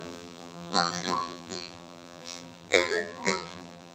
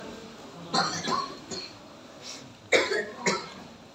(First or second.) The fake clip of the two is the first